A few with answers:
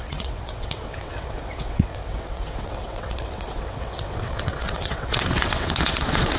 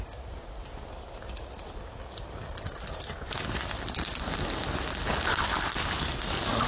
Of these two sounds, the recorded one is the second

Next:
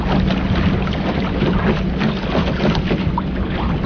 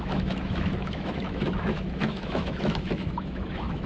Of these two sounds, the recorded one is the first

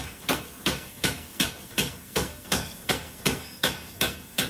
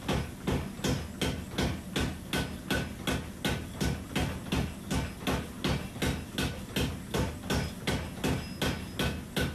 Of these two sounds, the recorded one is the second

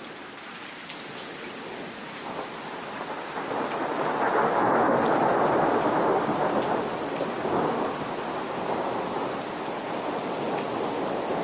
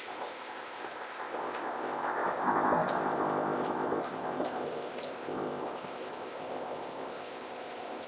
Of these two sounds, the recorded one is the first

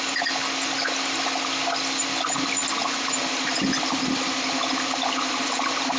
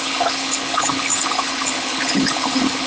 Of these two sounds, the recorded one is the first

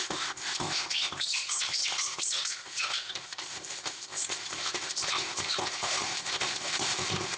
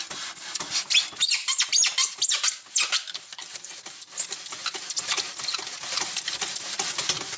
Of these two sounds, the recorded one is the second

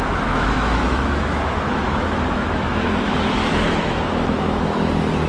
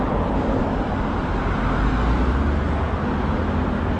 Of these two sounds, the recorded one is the second